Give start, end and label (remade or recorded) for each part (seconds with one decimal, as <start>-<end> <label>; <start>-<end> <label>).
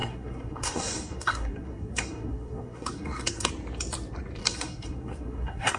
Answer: 0.0-3.5 remade; 3.5-4.4 recorded; 4.4-5.8 remade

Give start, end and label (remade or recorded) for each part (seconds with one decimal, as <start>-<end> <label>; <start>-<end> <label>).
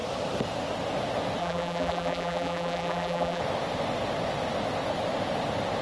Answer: 0.0-1.4 recorded; 1.4-3.4 remade; 3.4-5.8 recorded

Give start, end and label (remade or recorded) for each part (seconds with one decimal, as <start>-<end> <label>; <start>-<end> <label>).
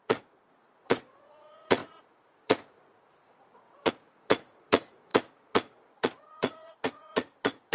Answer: 0.0-7.7 remade